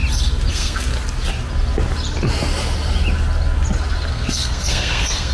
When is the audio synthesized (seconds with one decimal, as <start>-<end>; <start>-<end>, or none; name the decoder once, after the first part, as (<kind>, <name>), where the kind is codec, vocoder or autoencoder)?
0.5-0.9 (codec, SNAC); 4.1-5.3